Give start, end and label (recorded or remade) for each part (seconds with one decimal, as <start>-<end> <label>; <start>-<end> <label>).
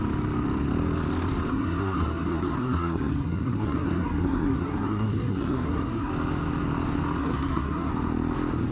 0.0-1.5 recorded; 1.5-6.1 remade; 6.1-7.2 recorded; 7.2-7.9 remade; 7.9-8.7 recorded